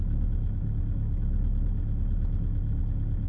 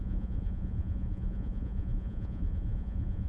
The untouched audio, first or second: first